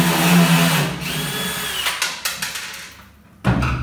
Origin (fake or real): real